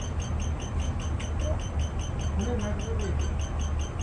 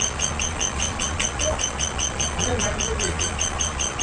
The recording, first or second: first